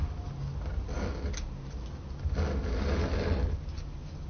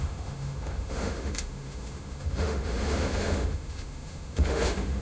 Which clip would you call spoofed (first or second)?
second